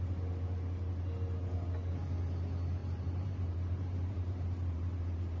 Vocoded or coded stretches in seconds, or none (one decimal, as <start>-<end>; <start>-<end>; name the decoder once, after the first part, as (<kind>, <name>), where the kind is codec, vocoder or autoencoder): 2.8-5.4 (vocoder, BigVGAN v2)